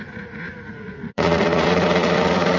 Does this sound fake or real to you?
fake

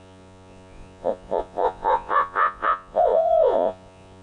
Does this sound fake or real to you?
fake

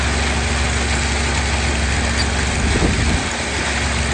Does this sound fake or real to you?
real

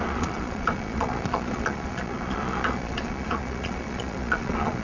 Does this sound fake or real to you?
fake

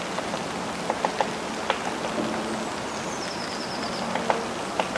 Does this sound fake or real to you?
real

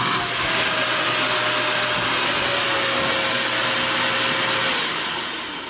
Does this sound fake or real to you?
real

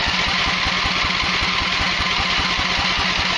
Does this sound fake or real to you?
real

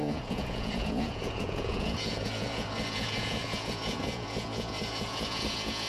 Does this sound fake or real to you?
fake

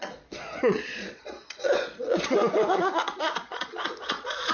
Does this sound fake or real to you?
fake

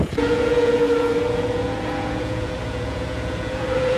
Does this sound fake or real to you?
fake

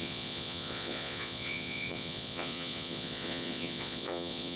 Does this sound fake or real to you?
fake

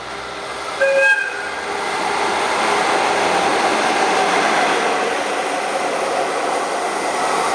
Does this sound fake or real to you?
real